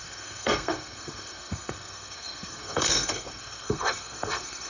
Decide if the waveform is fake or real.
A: fake